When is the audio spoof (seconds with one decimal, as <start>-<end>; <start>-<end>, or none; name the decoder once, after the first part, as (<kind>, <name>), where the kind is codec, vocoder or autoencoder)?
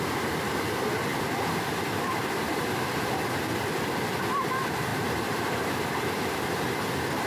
1.1-4.2 (vocoder, BigVGAN v2); 4.9-6.0